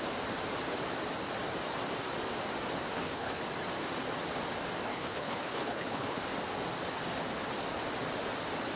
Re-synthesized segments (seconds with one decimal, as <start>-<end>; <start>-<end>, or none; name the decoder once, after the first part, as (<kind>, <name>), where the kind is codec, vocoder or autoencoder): 2.9-3.4 (codec, HILCodec); 4.9-6.2